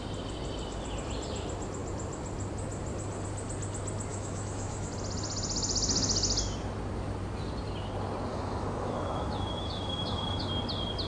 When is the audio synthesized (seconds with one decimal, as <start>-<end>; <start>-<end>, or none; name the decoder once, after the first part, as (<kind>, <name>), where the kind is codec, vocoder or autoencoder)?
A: 4.1-4.9 (autoencoder, DAC-VAE); 8.3-10.5